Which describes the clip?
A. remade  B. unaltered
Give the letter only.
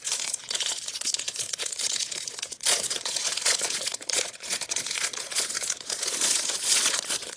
A